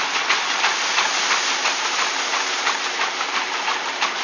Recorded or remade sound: remade